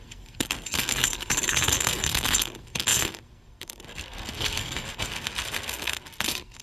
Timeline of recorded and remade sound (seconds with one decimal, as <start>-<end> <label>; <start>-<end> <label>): 0.0-6.6 remade

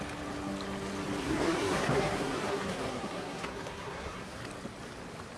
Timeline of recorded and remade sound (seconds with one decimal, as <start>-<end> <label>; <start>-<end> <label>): 0.0-1.2 recorded; 1.2-4.4 remade; 4.4-5.4 recorded

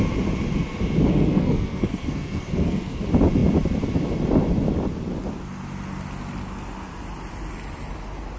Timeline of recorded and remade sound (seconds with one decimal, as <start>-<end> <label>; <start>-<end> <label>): 0.0-1.1 recorded; 1.1-3.0 remade; 3.0-8.4 recorded

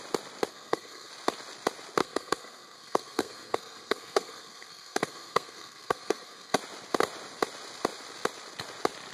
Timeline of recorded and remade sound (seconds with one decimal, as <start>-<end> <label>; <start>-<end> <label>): 0.0-0.5 recorded; 0.5-1.1 remade; 1.1-2.0 recorded; 2.0-6.6 remade; 6.6-9.1 recorded

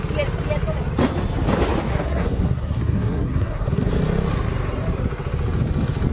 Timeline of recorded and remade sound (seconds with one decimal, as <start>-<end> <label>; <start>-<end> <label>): 0.0-1.9 recorded; 1.9-3.9 remade; 3.9-6.1 recorded

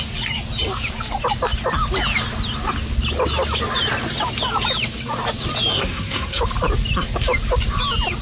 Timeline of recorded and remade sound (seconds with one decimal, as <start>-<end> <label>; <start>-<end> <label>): 0.0-5.7 recorded; 5.7-6.4 remade; 6.4-8.2 recorded

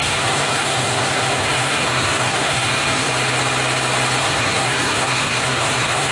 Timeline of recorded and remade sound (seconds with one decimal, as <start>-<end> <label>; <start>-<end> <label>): 0.0-3.1 remade; 3.1-4.2 recorded; 4.2-6.1 remade

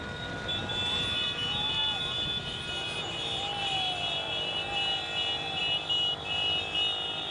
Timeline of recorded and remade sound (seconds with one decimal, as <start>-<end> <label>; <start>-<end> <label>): 0.0-7.3 recorded